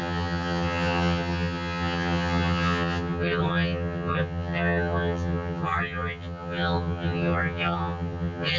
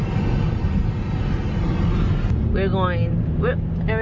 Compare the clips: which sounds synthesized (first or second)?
first